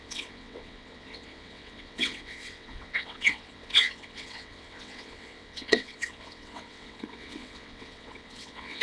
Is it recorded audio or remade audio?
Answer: remade